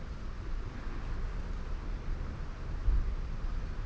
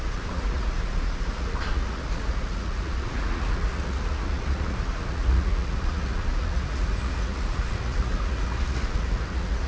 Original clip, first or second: first